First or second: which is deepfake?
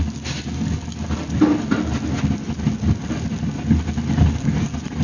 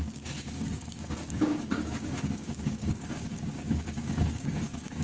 second